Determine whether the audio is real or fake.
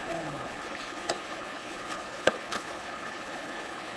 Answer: fake